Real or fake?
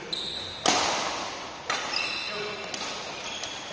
real